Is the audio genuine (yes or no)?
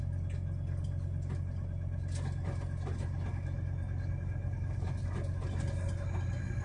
yes